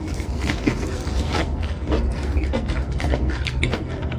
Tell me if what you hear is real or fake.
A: fake